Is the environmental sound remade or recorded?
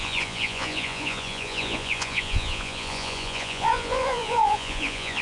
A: remade